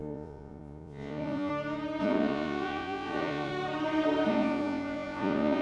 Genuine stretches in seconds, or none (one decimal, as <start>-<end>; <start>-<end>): 1.5-2.0; 3.5-4.3